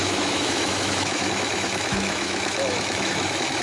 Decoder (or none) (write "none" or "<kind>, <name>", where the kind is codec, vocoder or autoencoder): autoencoder, DAC-VAE